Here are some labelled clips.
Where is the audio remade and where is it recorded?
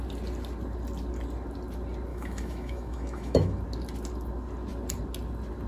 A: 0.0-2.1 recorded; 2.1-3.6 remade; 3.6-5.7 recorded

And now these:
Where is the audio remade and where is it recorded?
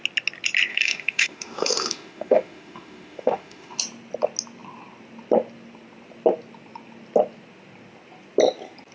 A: 0.0-0.7 recorded; 0.7-3.8 remade; 3.8-8.9 recorded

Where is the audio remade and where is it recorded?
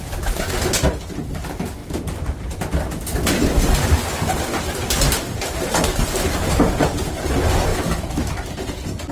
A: 0.0-7.7 recorded; 7.7-8.3 remade; 8.3-9.1 recorded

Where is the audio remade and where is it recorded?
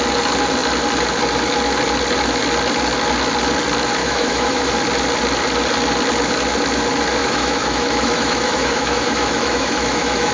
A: 0.0-4.0 recorded; 4.0-4.7 remade; 4.7-7.2 recorded; 7.2-10.3 remade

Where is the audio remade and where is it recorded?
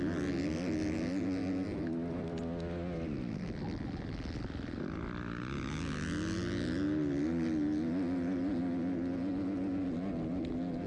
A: 0.0-10.9 recorded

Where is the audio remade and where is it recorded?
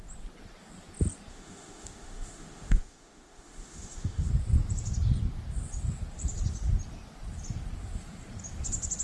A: 0.0-1.3 recorded; 1.3-4.3 remade; 4.3-9.0 recorded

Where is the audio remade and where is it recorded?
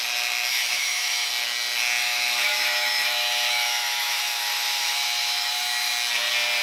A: 0.0-0.5 recorded; 0.5-1.3 remade; 1.3-2.0 recorded; 2.0-5.9 remade; 5.9-6.6 recorded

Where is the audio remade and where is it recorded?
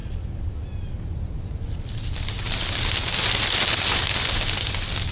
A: 0.0-5.1 recorded